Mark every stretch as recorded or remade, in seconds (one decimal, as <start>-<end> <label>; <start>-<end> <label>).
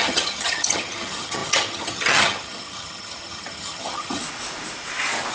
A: 0.0-4.2 remade; 4.2-5.3 recorded